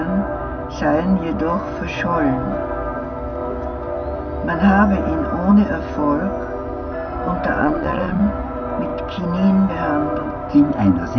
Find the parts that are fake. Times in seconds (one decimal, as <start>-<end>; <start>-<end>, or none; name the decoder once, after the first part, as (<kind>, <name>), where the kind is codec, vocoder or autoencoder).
7.6-8.2 (vocoder, Vocos)